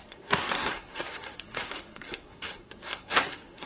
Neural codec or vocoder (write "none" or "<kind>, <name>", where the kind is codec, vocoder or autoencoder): codec, SNAC